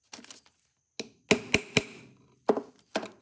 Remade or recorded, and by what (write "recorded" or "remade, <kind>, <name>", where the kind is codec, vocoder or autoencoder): recorded